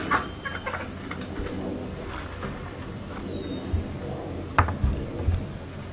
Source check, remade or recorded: recorded